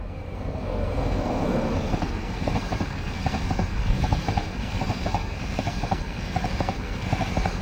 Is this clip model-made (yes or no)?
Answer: yes